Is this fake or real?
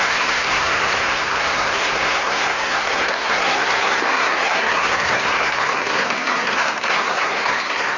fake